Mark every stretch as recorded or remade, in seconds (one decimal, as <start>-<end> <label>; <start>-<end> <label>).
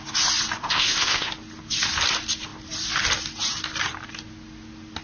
0.0-0.6 recorded; 0.6-1.3 remade; 1.3-5.0 recorded